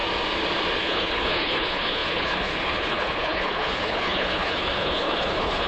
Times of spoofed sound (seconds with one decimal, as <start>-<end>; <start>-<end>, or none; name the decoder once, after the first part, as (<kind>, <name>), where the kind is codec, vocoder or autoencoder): 0.8-5.7 (codec, HILCodec)

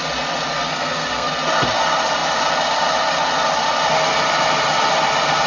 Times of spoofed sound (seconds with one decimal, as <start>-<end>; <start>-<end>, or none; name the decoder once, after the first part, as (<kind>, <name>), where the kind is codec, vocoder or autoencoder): 0.7-1.3 (codec, SNAC)

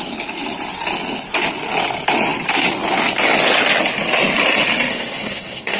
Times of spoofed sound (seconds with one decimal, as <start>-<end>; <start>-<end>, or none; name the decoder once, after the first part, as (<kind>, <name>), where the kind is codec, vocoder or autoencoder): 4.9-5.8 (codec, SNAC)

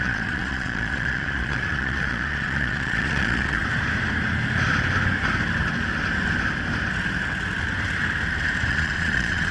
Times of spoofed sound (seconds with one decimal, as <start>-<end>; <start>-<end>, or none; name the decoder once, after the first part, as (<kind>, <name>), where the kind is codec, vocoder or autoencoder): 0.0-3.6 (vocoder, Vocos); 8.7-9.5

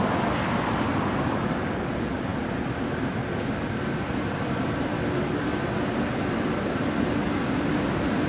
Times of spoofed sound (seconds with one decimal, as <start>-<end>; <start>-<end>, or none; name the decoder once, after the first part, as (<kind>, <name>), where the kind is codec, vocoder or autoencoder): 0.9-1.4 (vocoder, BigVGAN v2)

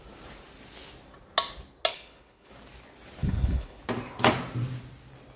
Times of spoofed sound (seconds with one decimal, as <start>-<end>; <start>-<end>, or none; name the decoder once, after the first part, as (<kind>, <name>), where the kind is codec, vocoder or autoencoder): 1.9-2.5 (codec, HILCodec); 3.2-3.8